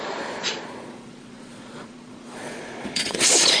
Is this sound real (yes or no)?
no